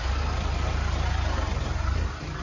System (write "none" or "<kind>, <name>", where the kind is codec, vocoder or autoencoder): none